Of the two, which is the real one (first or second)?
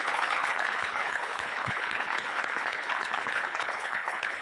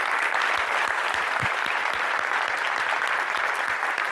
second